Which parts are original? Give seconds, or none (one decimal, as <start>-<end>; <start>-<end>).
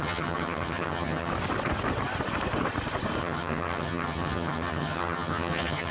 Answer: 1.3-3.2